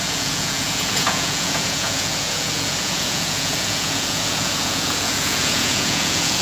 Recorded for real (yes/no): no